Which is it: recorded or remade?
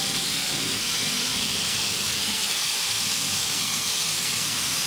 remade